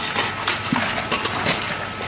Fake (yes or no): no